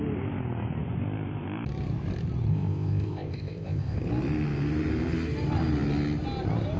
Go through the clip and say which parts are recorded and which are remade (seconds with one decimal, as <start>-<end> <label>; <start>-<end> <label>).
0.0-2.5 recorded; 2.5-4.0 remade; 4.0-6.8 recorded